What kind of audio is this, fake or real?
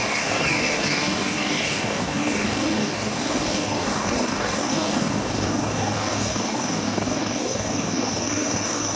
fake